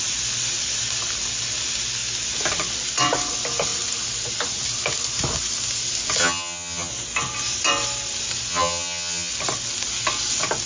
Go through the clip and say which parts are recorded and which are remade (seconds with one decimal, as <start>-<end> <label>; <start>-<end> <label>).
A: 0.0-6.2 recorded; 6.2-6.9 remade; 6.9-8.5 recorded; 8.5-9.3 remade; 9.3-10.7 recorded